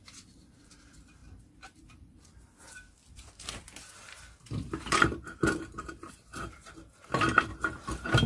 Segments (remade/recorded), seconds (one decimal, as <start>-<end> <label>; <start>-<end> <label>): 0.0-1.2 recorded; 1.2-6.1 remade; 6.1-8.3 recorded